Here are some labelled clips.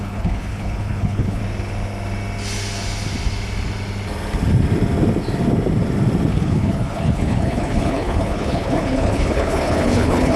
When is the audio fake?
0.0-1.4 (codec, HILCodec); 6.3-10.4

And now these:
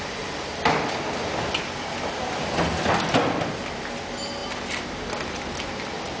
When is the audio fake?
none

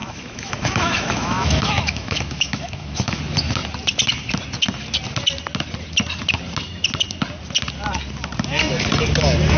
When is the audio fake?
0.0-3.2 (autoencoder, DAC-VAE)

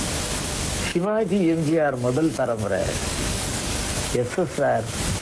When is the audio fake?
0.9-4.0 (codec, DAC)

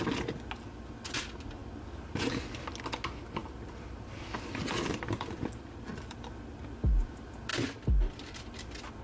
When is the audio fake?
3.4-6.3 (vocoder, BigVGAN v2)

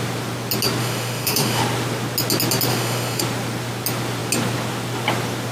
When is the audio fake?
0.8-1.6 (autoencoder, DAC-VAE); 2.7-3.2

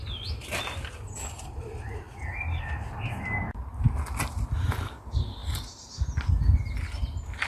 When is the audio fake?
none